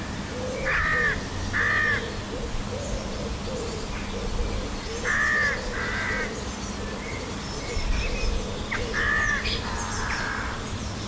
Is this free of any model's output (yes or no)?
yes